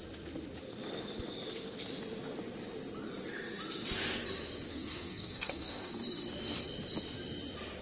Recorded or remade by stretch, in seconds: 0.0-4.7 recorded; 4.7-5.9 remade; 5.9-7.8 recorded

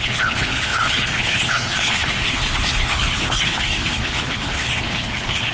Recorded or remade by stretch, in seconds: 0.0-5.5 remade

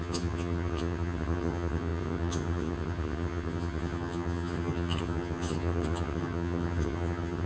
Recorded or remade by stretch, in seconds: 0.0-7.5 remade

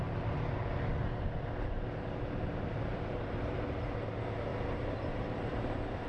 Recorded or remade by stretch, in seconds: 0.0-2.9 recorded; 2.9-3.4 remade; 3.4-4.5 recorded; 4.5-6.1 remade

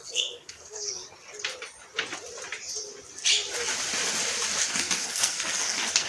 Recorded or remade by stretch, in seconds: 0.0-1.0 remade; 1.0-4.7 recorded; 4.7-6.1 remade

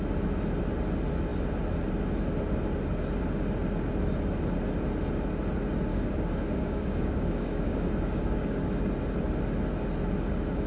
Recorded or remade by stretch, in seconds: 0.0-5.9 recorded; 5.9-8.9 remade; 8.9-10.7 recorded

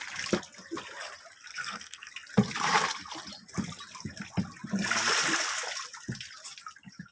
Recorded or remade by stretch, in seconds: 0.0-1.5 recorded; 1.5-2.1 remade; 2.1-7.1 recorded

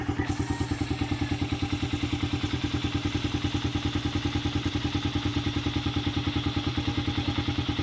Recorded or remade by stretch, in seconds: 0.0-7.8 recorded